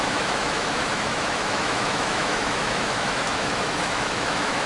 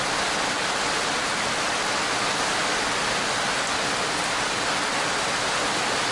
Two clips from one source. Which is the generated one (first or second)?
first